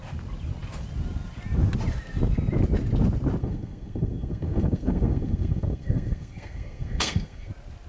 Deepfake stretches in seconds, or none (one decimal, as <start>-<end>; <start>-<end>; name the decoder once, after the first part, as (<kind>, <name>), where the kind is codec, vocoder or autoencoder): 3.4-7.5 (codec, SNAC)